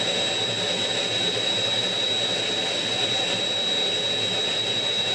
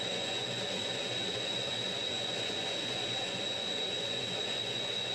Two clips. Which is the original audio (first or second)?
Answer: first